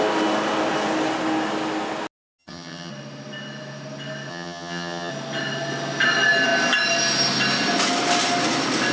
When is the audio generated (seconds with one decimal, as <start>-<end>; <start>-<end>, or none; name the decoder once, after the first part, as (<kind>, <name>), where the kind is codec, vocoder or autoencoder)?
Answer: 2.4-2.9 (vocoder, HiFi-GAN); 4.3-5.1